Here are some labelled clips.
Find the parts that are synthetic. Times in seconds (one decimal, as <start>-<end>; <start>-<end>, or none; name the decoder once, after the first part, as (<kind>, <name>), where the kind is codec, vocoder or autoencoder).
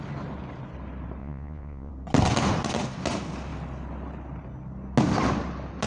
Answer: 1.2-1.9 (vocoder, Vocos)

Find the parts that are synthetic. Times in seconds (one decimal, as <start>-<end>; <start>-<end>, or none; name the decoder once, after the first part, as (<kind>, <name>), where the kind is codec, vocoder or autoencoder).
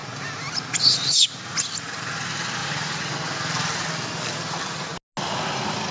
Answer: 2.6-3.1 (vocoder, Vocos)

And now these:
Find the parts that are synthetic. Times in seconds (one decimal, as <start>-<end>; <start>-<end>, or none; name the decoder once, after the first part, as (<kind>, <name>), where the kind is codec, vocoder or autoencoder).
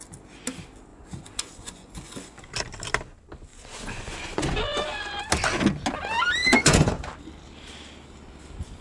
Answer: 0.9-2.5 (vocoder, Vocos); 3.5-5.3; 6.4-7.1